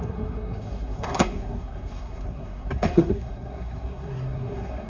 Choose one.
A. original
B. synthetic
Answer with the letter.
B